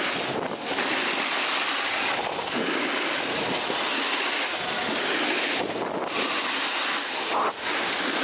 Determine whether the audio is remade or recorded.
recorded